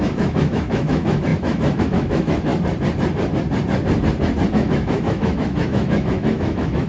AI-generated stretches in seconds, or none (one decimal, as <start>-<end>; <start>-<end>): 0.0-2.5; 4.5-6.9